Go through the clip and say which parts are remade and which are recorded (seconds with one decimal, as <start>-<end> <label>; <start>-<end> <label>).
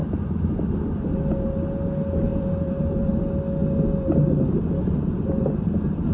0.0-0.5 remade; 0.5-2.3 recorded; 2.3-3.2 remade; 3.2-6.1 recorded